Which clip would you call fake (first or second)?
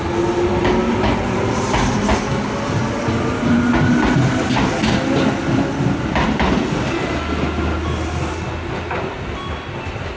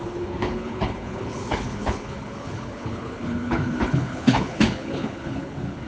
second